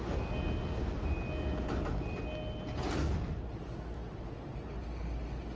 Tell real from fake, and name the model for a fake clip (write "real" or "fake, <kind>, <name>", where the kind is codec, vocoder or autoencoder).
real